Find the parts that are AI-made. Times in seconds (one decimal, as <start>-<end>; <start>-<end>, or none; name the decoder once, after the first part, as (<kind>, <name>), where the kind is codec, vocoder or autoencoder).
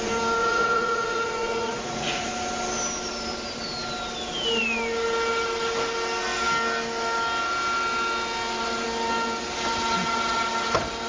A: 0.4-2.3 (vocoder, Vocos)